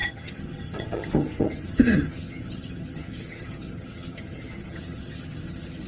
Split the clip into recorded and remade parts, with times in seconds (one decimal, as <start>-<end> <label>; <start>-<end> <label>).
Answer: 0.0-5.9 remade